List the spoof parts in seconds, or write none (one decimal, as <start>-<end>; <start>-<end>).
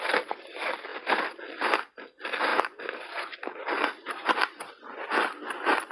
2.5-4.7